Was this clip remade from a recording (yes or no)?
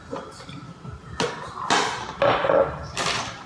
no